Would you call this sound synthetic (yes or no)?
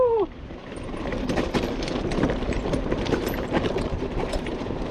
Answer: yes